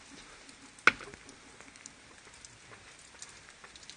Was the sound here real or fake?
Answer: real